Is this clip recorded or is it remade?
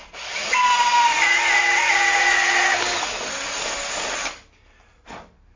recorded